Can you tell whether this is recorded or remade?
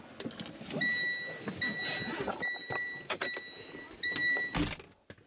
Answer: recorded